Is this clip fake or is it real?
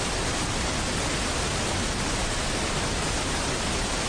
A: real